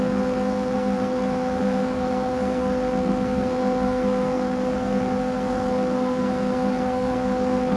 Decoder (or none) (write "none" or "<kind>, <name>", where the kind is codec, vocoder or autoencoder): codec, SNAC